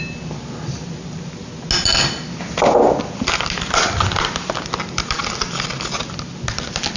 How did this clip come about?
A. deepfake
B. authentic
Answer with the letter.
B